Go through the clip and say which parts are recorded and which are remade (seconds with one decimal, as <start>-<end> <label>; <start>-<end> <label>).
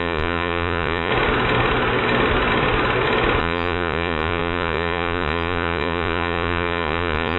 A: 0.0-1.1 remade; 1.1-3.4 recorded; 3.4-7.4 remade